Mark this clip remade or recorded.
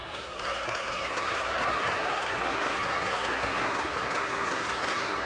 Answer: remade